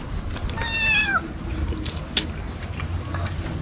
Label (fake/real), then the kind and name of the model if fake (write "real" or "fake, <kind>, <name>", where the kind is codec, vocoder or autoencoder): real